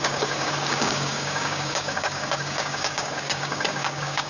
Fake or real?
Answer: fake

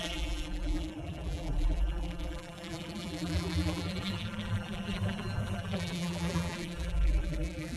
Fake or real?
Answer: fake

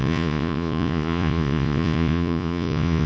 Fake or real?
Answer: fake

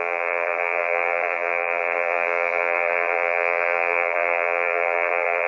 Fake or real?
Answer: fake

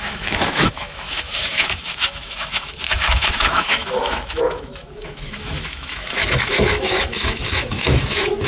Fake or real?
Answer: fake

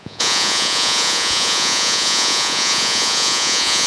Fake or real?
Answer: fake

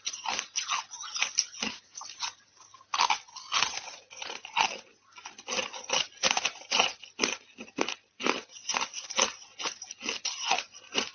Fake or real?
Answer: real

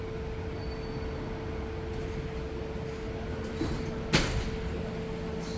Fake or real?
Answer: real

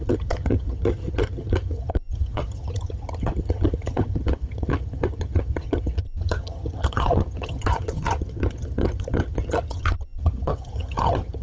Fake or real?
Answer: fake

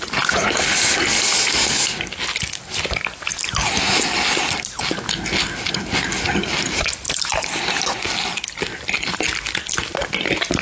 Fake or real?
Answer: real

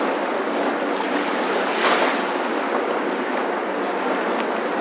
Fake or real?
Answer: real